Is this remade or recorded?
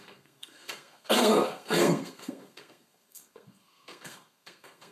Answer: remade